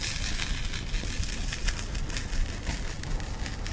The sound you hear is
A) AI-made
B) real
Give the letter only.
B